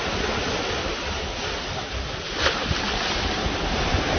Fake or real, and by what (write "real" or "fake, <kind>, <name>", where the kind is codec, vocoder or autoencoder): real